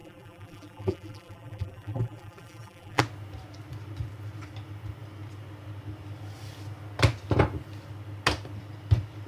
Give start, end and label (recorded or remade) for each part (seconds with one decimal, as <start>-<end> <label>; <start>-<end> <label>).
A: 0.0-3.0 remade; 3.0-9.3 recorded